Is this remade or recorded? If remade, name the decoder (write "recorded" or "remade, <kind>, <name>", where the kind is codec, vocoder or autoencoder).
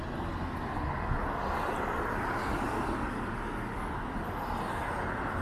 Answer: recorded